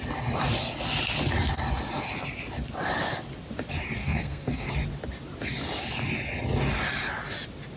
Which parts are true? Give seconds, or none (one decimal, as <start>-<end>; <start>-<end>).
0.0-4.0; 4.7-7.8